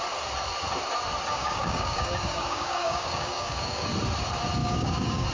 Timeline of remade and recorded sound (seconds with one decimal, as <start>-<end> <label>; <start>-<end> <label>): 0.0-1.4 recorded; 1.4-3.9 remade; 3.9-4.6 recorded; 4.6-5.3 remade